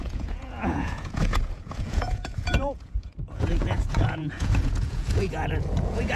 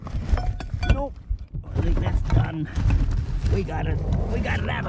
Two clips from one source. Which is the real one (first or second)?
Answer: second